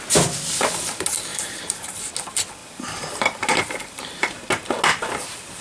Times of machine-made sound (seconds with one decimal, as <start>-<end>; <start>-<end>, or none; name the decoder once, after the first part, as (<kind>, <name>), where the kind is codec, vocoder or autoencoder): 1.3-2.1 (vocoder, BigVGAN v2); 2.6-4.3